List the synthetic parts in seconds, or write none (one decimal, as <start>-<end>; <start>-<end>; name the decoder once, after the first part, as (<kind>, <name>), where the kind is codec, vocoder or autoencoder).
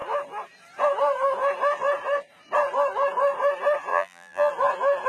3.9-4.5 (vocoder, BigVGAN v2)